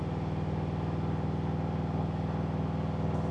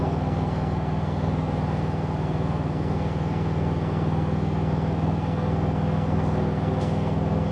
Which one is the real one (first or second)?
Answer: first